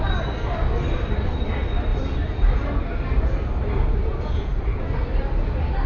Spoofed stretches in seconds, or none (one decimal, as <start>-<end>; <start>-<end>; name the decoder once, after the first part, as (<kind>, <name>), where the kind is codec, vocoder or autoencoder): 4.1-4.8 (vocoder, Vocos)